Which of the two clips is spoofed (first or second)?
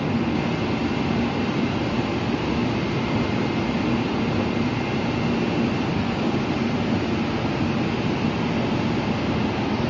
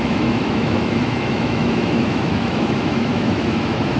second